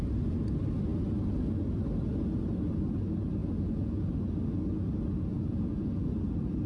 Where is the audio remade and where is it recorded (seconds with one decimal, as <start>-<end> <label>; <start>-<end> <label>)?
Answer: 0.0-3.4 recorded; 3.4-4.1 remade; 4.1-5.3 recorded; 5.3-6.1 remade; 6.1-6.7 recorded